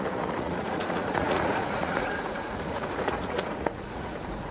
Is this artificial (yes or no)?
yes